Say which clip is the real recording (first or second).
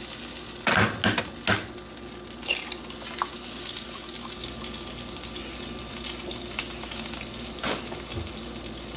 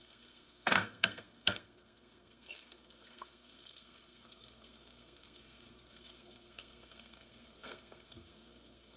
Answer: first